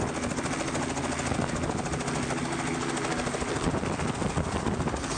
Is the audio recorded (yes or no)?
yes